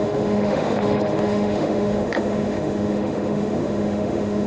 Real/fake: fake